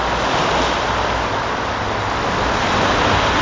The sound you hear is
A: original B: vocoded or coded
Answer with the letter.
A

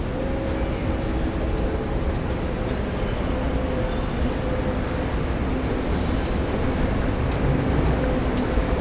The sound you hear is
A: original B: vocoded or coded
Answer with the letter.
A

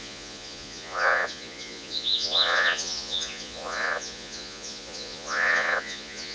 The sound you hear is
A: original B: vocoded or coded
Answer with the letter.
B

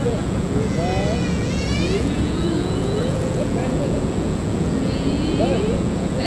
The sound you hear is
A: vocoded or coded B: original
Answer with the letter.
A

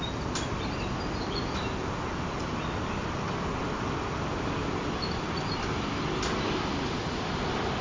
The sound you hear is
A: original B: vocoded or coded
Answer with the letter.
A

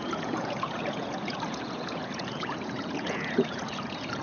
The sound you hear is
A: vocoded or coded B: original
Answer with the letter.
A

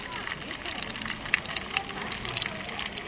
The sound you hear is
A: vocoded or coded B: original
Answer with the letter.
B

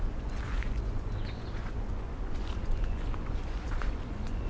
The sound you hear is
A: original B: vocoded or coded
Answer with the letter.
B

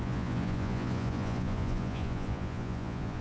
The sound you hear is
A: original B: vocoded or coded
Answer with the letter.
B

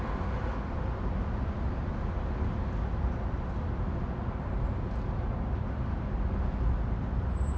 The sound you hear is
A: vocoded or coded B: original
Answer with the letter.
B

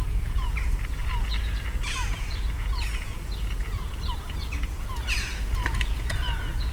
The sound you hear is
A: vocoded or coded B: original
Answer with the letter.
A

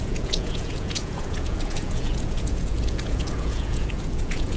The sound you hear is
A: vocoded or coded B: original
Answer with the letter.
A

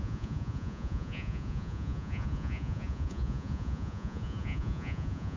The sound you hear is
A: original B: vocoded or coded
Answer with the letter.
B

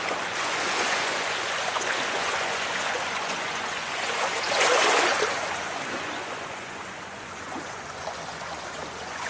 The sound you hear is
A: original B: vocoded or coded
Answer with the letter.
B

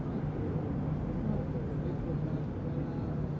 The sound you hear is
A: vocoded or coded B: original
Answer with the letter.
B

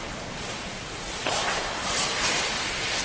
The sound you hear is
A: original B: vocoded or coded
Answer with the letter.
B